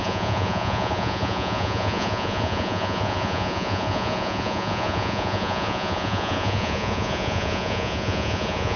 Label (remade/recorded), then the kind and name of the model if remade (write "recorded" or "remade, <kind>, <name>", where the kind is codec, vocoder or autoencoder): remade, vocoder, Vocos